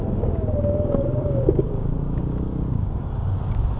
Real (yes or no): no